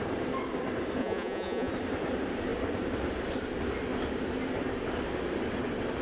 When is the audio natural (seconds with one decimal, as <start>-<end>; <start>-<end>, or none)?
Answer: 0.0-1.0; 1.7-6.0